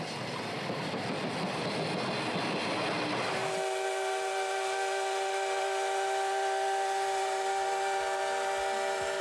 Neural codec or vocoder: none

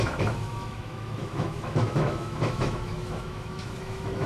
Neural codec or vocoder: autoencoder, DAC-VAE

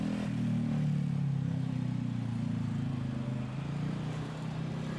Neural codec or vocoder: none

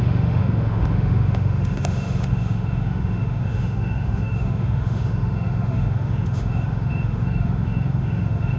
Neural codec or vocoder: autoencoder, DAC-VAE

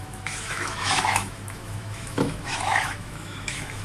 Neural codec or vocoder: autoencoder, DAC-VAE